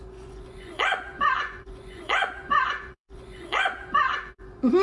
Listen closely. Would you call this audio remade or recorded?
remade